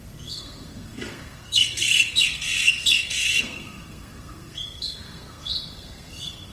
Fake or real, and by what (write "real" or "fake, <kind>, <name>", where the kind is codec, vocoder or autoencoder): fake, codec, SNAC